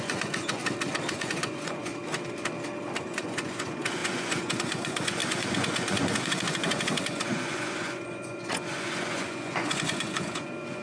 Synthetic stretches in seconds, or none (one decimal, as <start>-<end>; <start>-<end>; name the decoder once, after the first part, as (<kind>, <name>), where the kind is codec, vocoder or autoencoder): 0.0-0.6 (vocoder, Vocos); 1.1-1.9; 3.0-10.8